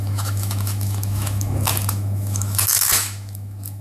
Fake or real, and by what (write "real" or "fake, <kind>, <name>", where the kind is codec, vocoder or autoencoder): fake, autoencoder, DAC-VAE